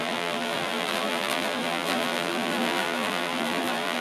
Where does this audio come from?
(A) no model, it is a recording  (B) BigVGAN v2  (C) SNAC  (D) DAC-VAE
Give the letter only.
B